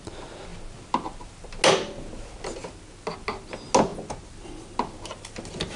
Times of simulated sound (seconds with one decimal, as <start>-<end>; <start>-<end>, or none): none